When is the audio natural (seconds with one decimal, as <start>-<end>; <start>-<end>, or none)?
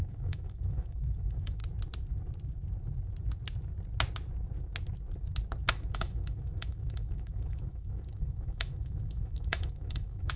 1.6-5.7